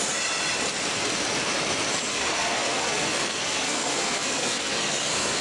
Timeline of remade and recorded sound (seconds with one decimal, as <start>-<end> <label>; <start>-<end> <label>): 0.0-2.1 recorded; 2.1-5.4 remade